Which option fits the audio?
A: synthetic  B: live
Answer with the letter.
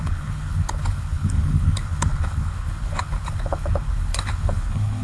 A